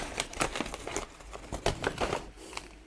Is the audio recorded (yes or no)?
yes